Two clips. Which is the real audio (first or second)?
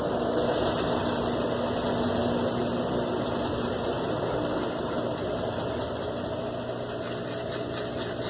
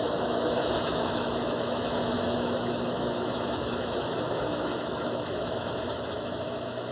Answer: first